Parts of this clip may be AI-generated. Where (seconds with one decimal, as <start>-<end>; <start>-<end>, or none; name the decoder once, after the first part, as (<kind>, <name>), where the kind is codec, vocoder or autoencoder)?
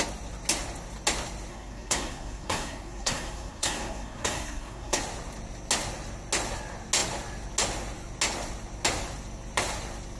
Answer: 1.5-5.0 (codec, SNAC)